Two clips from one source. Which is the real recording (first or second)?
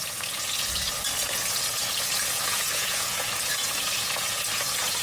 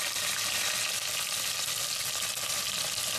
second